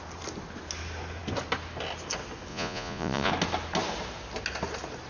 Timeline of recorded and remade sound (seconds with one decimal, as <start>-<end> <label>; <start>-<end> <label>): 0.0-2.5 recorded; 2.5-3.3 remade; 3.3-5.1 recorded